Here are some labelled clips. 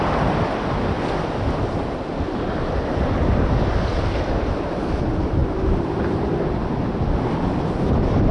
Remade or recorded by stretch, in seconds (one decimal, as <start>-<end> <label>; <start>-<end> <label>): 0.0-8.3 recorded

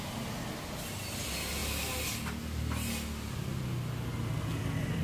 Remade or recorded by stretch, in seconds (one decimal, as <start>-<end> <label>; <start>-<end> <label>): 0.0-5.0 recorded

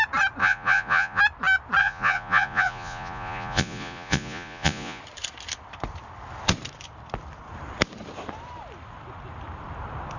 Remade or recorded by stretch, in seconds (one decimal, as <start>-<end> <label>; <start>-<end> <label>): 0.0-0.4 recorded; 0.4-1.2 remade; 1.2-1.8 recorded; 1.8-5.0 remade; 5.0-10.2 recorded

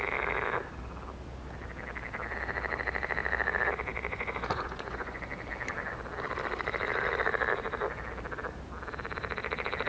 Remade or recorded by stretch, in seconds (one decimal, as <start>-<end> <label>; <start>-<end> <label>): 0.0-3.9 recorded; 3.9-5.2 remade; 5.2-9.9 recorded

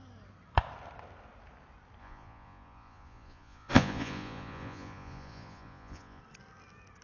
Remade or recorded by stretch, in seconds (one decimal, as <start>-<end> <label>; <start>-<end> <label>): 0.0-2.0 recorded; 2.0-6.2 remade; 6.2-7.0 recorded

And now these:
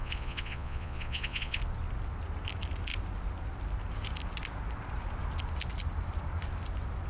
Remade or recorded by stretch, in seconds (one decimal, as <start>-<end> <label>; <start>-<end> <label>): 0.0-1.6 remade; 1.6-7.1 recorded

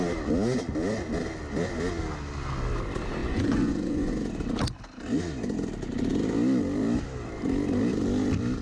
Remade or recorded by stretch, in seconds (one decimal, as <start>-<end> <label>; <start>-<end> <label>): 0.0-3.2 recorded; 3.2-4.3 remade; 4.3-8.6 recorded

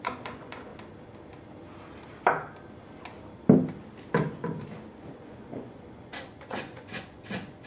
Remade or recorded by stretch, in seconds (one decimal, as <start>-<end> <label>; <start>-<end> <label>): 0.0-0.7 remade; 0.7-4.9 recorded; 4.9-7.7 remade